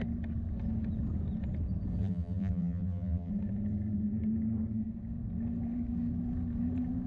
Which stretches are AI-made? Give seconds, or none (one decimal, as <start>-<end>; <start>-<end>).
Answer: 2.0-3.3